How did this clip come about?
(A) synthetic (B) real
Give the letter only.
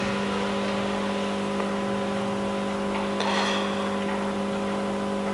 B